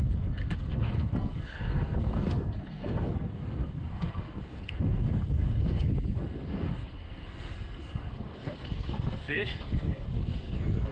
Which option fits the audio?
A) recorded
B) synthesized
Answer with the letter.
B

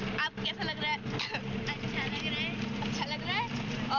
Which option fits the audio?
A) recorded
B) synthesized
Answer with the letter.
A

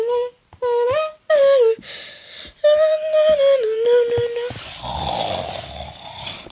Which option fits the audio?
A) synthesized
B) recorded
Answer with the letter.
B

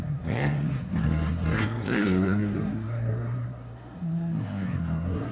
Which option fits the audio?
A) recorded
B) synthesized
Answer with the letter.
B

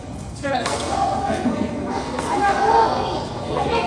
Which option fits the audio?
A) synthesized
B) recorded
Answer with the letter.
A